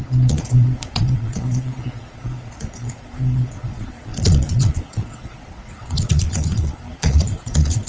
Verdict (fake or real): fake